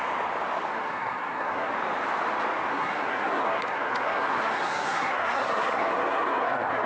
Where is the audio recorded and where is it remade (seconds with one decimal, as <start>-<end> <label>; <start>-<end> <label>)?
0.0-0.7 recorded; 0.7-1.7 remade; 1.7-2.7 recorded; 2.7-6.9 remade